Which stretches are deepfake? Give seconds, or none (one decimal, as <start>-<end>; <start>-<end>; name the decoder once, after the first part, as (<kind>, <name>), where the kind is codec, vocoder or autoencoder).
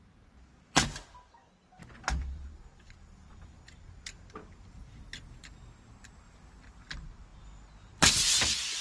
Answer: 1.4-3.5 (vocoder, BigVGAN v2); 4.4-5.0